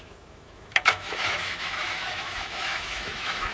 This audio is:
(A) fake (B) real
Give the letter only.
A